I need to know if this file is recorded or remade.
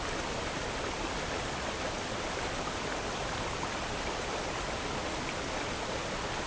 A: recorded